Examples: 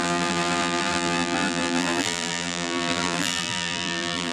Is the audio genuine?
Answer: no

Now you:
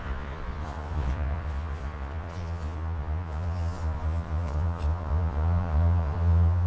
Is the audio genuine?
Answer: no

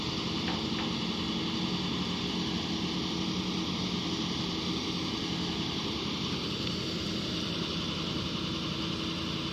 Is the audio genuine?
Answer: yes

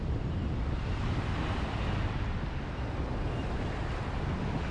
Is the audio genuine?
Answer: yes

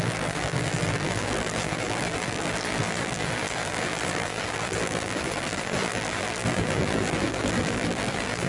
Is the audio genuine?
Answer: no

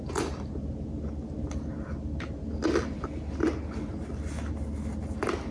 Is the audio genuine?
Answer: yes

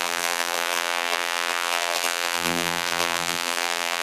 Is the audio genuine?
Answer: no